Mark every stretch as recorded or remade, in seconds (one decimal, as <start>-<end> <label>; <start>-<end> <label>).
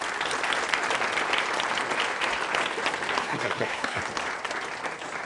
0.0-3.2 recorded; 3.2-4.0 remade; 4.0-5.3 recorded